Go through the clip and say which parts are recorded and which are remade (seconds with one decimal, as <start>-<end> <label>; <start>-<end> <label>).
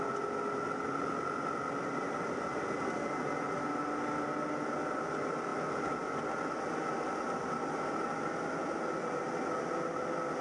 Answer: 0.0-10.4 recorded